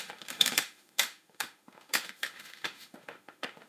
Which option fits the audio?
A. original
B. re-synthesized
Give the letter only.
B